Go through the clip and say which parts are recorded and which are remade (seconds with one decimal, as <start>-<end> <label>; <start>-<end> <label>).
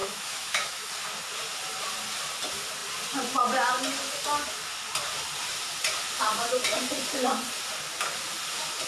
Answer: 0.0-0.9 remade; 0.9-8.9 recorded